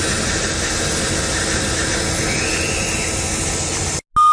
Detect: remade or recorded recorded